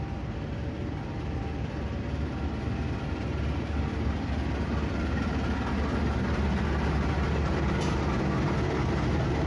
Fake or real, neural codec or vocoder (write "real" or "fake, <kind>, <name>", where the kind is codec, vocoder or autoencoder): real